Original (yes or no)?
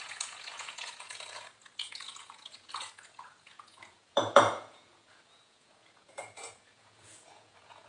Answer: no